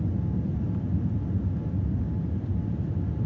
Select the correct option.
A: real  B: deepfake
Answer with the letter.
A